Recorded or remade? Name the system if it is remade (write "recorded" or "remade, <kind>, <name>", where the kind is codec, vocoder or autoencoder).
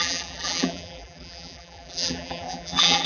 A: remade, vocoder, BigVGAN v2